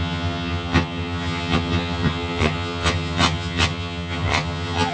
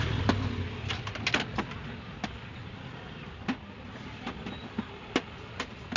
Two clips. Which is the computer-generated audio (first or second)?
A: first